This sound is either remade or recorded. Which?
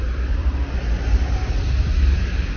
remade